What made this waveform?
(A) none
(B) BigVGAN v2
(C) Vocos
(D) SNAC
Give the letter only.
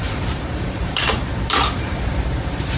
B